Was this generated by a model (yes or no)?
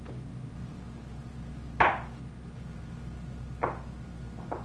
no